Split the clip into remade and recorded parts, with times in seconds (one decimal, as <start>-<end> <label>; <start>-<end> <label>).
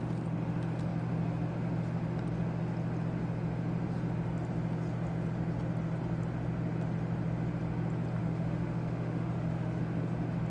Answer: 0.0-8.2 recorded; 8.2-9.8 remade; 9.8-10.5 recorded